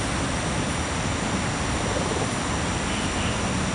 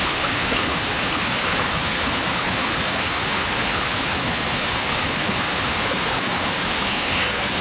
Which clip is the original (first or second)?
first